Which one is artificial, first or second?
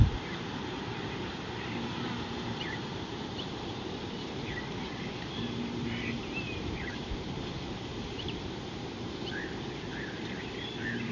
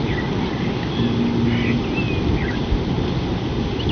first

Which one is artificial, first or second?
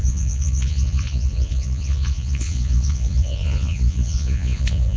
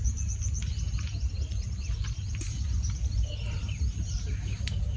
first